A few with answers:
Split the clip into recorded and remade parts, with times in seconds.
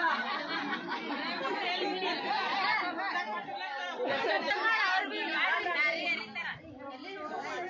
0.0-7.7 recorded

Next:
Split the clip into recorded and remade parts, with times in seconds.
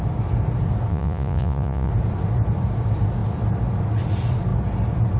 0.0-0.9 recorded; 0.9-1.9 remade; 1.9-5.2 recorded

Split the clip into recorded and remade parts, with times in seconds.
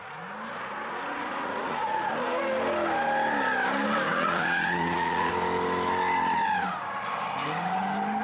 0.0-1.1 recorded; 1.1-2.1 remade; 2.1-4.1 recorded; 4.1-5.3 remade; 5.3-8.2 recorded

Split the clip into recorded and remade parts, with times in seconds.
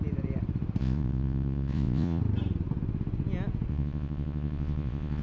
0.0-0.8 recorded; 0.8-2.2 remade; 2.2-3.7 recorded; 3.7-5.2 remade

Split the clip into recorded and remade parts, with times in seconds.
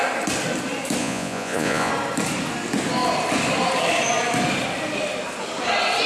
0.0-1.0 recorded; 1.0-1.9 remade; 1.9-6.1 recorded